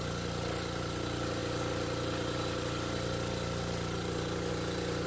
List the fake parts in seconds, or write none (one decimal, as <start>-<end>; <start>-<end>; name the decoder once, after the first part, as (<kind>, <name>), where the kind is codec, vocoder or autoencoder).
none